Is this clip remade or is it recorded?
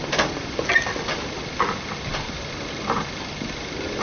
recorded